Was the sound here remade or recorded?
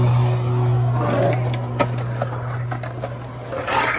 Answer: recorded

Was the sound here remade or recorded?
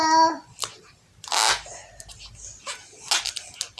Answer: recorded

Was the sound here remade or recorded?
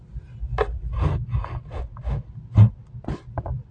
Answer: recorded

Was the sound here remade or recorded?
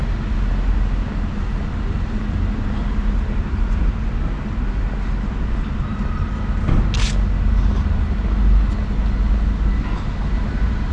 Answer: recorded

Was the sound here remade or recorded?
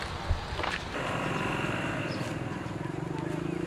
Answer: recorded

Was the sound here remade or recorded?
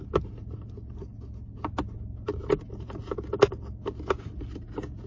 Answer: recorded